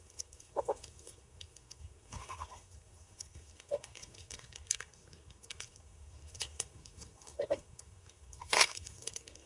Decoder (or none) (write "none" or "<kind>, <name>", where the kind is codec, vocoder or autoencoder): codec, SNAC